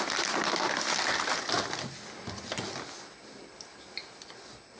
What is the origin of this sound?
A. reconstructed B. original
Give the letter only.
B